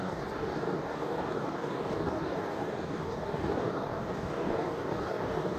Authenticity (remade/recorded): remade